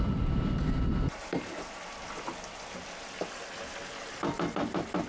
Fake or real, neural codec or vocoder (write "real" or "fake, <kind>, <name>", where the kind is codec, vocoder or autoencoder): real